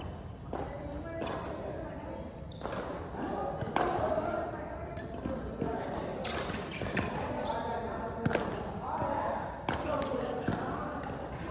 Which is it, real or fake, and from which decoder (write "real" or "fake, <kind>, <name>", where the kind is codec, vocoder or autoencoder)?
real